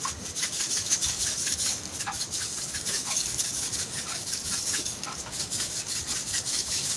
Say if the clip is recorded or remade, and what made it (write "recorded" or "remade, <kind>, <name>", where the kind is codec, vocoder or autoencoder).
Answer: remade, codec, DAC